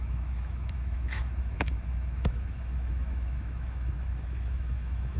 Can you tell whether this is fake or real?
fake